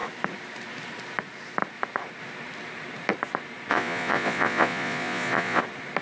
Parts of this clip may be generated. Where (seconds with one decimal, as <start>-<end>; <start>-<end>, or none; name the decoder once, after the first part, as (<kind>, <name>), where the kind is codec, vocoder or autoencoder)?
3.7-5.6 (vocoder, Vocos)